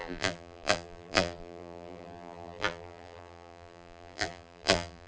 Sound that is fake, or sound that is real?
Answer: fake